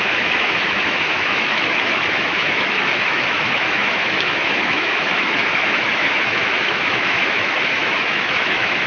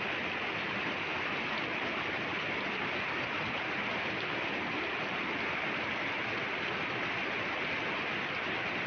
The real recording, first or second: second